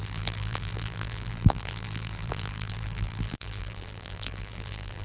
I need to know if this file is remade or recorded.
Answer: remade